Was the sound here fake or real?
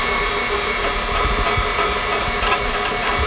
real